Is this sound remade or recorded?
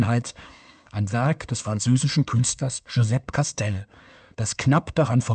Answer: remade